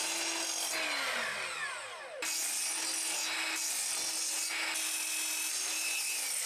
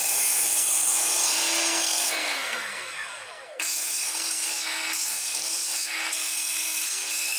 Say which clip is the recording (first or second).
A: first